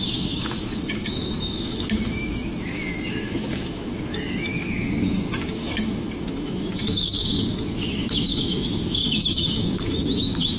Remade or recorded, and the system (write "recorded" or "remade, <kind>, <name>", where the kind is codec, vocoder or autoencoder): remade, autoencoder, DAC-VAE